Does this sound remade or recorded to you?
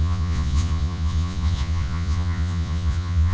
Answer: remade